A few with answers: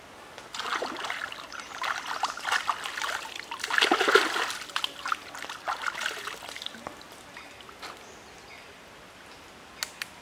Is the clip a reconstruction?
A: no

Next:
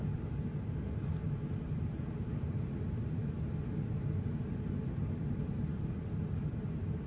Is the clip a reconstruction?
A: no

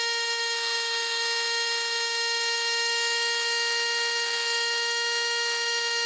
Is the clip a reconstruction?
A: yes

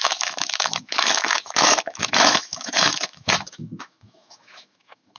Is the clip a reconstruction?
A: yes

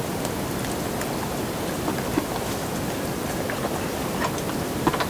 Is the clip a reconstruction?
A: no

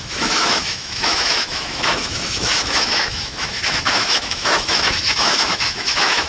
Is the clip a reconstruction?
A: yes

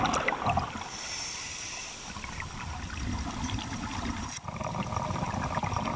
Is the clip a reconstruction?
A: no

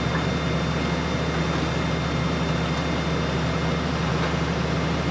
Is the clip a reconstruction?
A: no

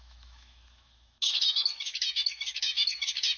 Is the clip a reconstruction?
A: yes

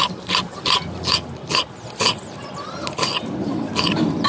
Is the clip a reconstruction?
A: no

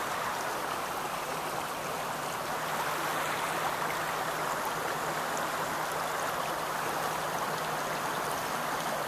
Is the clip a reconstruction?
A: no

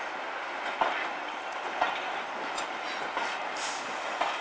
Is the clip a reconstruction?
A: no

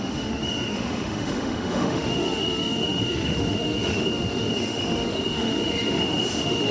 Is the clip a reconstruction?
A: yes